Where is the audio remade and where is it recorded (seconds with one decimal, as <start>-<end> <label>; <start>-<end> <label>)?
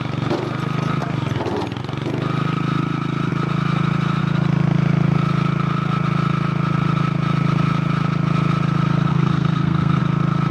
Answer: 0.0-9.1 recorded; 9.1-10.0 remade; 10.0-10.5 recorded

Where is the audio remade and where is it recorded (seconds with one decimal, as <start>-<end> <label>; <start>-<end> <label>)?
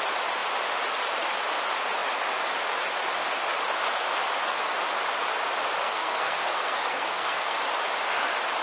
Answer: 0.0-5.8 recorded; 5.8-7.6 remade; 7.6-8.6 recorded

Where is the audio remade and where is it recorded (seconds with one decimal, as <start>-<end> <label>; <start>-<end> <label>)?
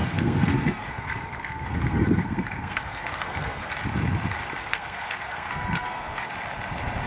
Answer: 0.0-3.7 remade; 3.7-4.6 recorded; 4.6-6.3 remade; 6.3-7.1 recorded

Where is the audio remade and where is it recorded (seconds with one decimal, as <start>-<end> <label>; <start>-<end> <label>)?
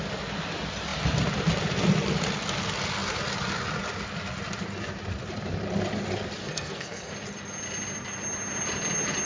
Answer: 0.0-6.4 recorded; 6.4-7.1 remade; 7.1-9.3 recorded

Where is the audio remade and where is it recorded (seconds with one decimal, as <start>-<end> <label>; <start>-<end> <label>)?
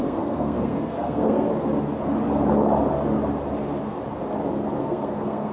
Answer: 0.0-1.5 remade; 1.5-4.8 recorded; 4.8-5.5 remade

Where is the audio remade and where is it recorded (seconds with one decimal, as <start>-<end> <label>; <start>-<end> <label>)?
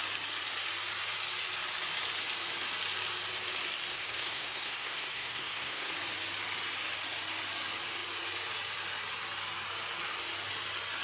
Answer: 0.0-3.9 recorded; 3.9-5.9 remade; 5.9-11.0 recorded